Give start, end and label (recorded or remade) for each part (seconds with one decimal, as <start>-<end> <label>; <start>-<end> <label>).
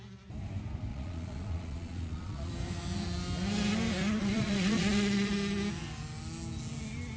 0.0-0.9 recorded; 0.9-2.5 remade; 2.5-4.2 recorded; 4.2-5.3 remade; 5.3-7.2 recorded